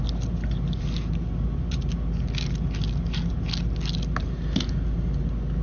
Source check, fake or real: real